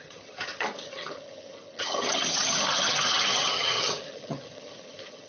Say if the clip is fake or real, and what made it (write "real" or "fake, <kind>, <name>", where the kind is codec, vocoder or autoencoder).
fake, vocoder, HiFi-GAN